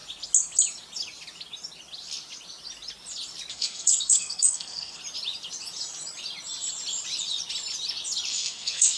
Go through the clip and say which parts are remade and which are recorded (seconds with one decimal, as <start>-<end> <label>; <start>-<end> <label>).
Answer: 0.0-3.5 recorded; 3.5-5.0 remade; 5.0-8.3 recorded; 8.3-9.0 remade